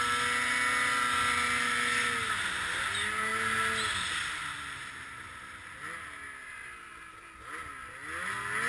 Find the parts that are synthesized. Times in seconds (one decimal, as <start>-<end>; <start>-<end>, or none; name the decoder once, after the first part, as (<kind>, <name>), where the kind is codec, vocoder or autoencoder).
none